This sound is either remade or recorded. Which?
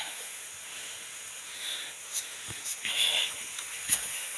remade